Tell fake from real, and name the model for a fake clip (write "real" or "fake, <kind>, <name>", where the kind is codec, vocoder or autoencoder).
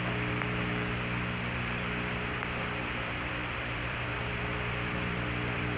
fake, vocoder, BigVGAN v2